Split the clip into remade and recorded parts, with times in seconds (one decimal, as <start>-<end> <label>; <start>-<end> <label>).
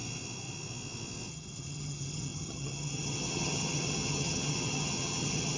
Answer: 0.0-1.3 recorded; 1.3-5.6 remade